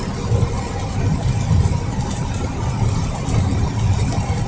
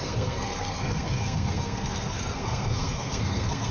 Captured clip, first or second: first